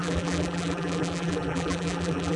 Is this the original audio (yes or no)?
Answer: no